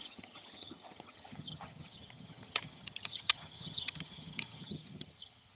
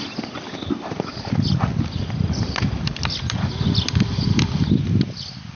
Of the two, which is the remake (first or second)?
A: first